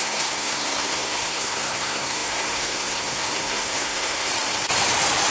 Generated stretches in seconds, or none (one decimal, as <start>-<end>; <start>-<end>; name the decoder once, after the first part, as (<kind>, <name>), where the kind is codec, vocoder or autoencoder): 0.0-4.3 (codec, SNAC)